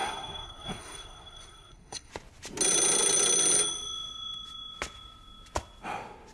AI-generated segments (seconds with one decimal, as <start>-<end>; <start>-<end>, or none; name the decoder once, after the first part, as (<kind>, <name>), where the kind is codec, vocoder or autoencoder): 0.0-2.1 (codec, SNAC)